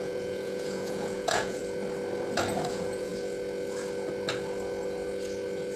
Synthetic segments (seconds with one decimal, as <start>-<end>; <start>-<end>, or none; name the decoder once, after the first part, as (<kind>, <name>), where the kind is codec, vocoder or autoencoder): 0.0-1.6 (vocoder, Vocos); 2.7-3.1